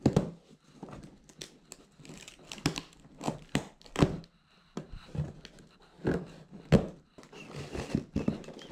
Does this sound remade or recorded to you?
recorded